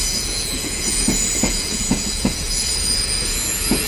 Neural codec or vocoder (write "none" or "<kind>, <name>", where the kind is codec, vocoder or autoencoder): vocoder, Vocos